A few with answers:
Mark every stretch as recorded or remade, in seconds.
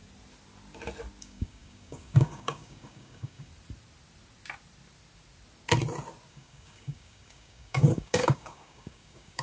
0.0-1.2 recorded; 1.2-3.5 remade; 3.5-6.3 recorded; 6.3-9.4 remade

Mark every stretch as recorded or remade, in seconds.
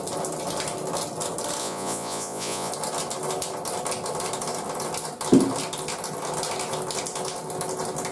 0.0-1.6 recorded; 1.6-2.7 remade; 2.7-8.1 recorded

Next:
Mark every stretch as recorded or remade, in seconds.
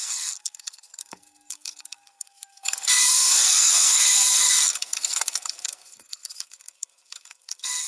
0.0-7.9 remade